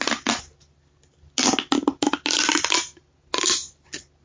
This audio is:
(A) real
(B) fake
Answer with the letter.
A